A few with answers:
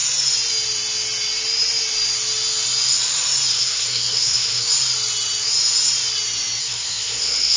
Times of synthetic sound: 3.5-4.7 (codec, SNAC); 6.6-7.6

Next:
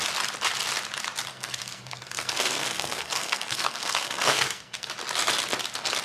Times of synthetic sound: 1.3-4.9 (codec, SNAC)

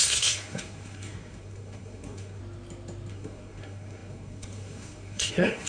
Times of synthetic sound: 0.0-2.4 (codec, SNAC); 3.1-5.7

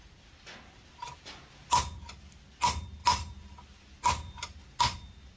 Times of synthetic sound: none

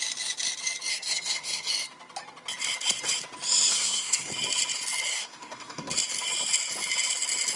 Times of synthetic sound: 0.9-1.7 (codec, SNAC); 3.7-4.3; 5.1-5.9

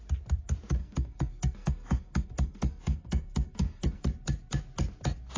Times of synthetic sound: 0.8-4.0 (codec, SNAC)